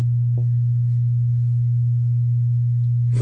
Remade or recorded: recorded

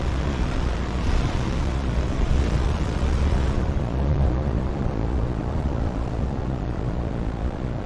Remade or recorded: remade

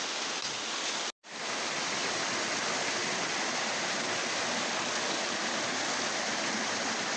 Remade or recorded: recorded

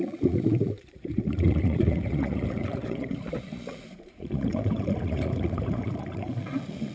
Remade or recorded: remade